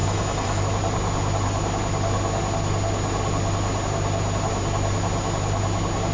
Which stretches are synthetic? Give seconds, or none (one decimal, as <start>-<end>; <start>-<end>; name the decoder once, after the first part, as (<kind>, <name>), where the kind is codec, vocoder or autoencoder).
0.0-0.6 (autoencoder, DAC-VAE)